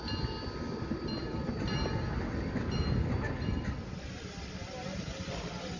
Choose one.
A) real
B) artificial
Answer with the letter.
A